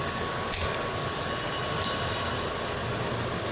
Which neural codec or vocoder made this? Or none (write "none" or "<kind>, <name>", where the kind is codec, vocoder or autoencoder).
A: none